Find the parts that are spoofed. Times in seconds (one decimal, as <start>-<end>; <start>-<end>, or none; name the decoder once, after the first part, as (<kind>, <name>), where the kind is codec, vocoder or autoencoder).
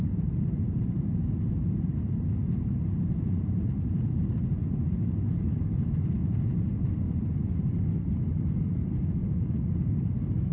0.0-4.6 (vocoder, BigVGAN v2); 5.7-6.2; 6.8-10.5